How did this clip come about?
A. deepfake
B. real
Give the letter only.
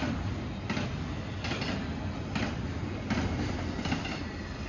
B